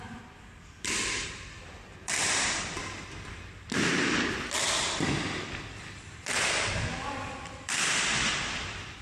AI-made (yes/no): yes